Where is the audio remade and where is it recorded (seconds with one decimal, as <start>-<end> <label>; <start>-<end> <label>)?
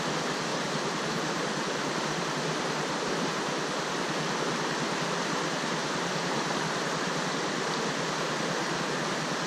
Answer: 0.0-0.5 recorded; 0.5-3.0 remade; 3.0-5.8 recorded; 5.8-6.6 remade; 6.6-9.5 recorded